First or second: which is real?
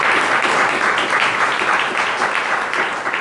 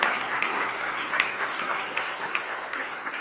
first